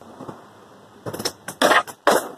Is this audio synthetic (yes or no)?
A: no